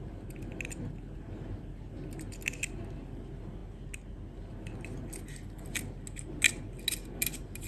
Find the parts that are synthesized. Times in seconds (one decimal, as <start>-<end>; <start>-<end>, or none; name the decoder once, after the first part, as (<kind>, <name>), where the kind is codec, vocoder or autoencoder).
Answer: none

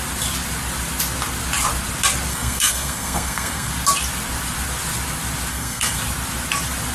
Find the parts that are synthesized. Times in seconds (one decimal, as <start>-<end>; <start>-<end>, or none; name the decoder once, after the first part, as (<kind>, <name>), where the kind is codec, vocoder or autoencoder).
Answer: 2.3-3.7 (codec, SNAC); 5.5-6.0